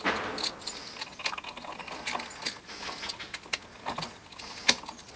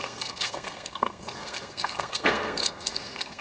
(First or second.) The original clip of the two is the first